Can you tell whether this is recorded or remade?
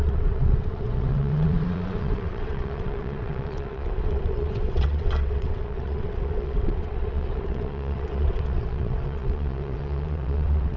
remade